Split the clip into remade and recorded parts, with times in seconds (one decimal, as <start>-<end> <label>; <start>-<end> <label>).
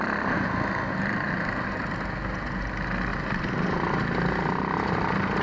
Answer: 0.0-5.4 recorded